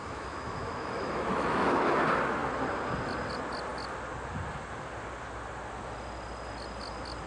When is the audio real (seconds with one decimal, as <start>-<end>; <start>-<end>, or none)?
1.8-7.3